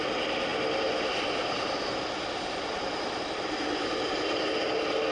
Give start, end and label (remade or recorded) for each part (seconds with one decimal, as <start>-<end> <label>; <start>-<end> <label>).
0.0-5.1 recorded

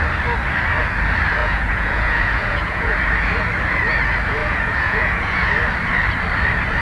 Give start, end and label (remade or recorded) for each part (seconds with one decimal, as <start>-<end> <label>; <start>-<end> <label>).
0.0-1.4 recorded; 1.4-3.0 remade; 3.0-4.4 recorded; 4.4-5.5 remade; 5.5-6.8 recorded

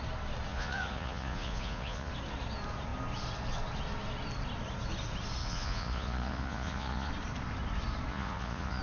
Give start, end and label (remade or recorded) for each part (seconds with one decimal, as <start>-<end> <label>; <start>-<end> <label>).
0.0-0.5 recorded; 0.5-2.1 remade; 2.1-5.4 recorded; 5.4-7.1 remade; 7.1-8.1 recorded; 8.1-8.8 remade

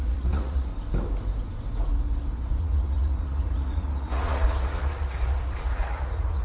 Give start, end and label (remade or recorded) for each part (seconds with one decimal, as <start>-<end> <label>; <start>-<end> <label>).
0.0-0.7 remade; 0.7-2.6 recorded; 2.6-6.4 remade

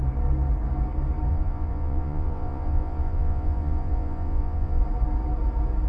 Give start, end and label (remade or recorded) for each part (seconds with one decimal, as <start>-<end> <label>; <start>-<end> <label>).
0.0-1.3 recorded; 1.3-4.8 remade; 4.8-5.9 recorded

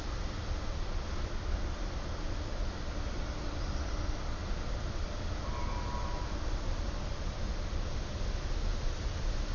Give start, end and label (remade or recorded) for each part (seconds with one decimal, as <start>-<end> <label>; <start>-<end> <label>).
0.0-9.5 recorded

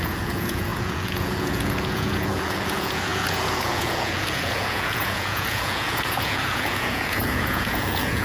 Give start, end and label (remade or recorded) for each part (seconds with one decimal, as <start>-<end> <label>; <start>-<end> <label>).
0.0-8.2 remade

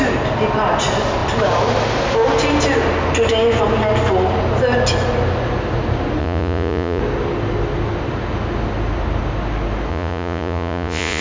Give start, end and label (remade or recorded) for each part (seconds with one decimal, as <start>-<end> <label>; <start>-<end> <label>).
0.0-6.2 recorded; 6.2-7.0 remade; 7.0-9.9 recorded; 9.9-11.2 remade